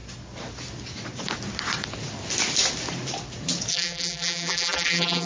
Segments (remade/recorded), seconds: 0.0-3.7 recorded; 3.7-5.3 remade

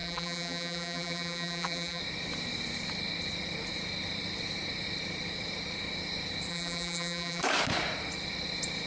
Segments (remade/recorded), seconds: 0.0-2.0 remade; 2.0-6.5 recorded; 6.5-7.4 remade; 7.4-8.9 recorded

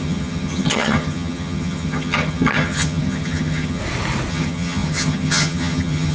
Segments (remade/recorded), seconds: 0.0-3.8 remade; 3.8-4.3 recorded; 4.3-6.1 remade

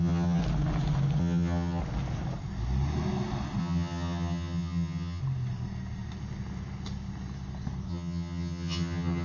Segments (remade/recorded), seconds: 0.0-0.4 remade; 0.4-1.2 recorded; 1.2-1.8 remade; 1.8-3.6 recorded; 3.6-5.2 remade; 5.2-7.9 recorded; 7.9-9.2 remade